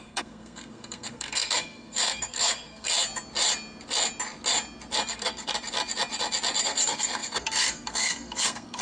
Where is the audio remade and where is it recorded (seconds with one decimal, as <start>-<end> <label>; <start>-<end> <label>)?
0.0-2.9 remade; 2.9-5.1 recorded; 5.1-5.5 remade; 5.5-6.6 recorded; 6.6-8.8 remade